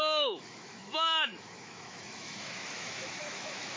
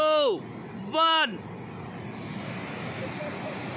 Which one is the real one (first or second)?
second